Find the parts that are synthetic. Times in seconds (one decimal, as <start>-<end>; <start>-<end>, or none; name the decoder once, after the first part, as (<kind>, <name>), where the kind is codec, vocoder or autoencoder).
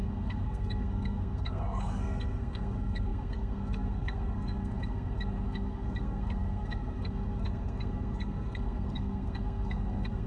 0.0-10.3 (codec, SNAC)